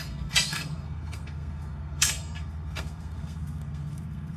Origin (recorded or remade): remade